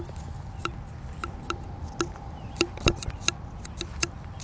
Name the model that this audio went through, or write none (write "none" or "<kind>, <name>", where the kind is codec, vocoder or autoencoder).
none